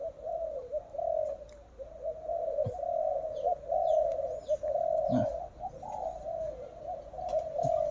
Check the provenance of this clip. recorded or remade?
recorded